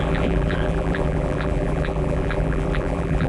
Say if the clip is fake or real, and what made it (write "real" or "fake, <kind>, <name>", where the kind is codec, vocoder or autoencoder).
fake, vocoder, BigVGAN v2